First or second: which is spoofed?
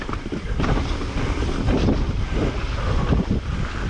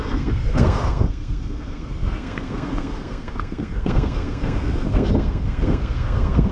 second